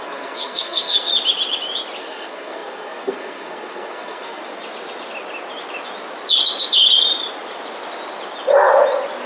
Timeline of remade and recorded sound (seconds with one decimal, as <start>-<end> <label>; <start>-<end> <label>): 0.0-1.1 remade; 1.1-2.0 recorded; 2.0-4.4 remade; 4.4-9.3 recorded